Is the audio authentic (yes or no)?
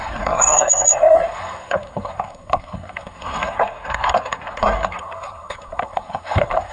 no